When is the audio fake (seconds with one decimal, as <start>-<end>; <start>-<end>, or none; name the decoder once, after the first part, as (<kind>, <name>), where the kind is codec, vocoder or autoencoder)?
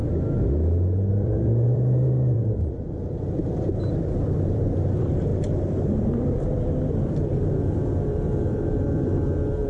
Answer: 1.1-9.7 (vocoder, BigVGAN v2)